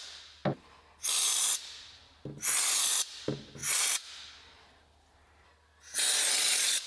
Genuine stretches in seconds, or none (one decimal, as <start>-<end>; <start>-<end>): 0.0-6.9